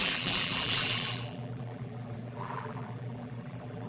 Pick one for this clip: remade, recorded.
remade